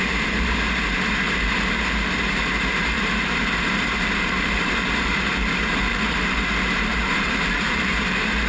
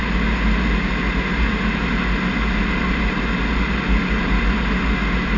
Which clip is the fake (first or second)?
first